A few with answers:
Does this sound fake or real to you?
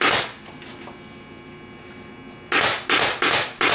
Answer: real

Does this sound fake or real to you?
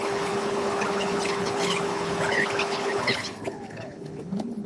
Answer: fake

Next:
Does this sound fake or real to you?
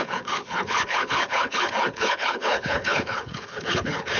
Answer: fake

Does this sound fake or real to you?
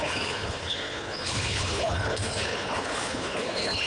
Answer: fake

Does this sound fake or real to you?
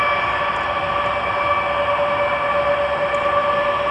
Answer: real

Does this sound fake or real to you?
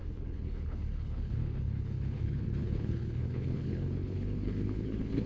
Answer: fake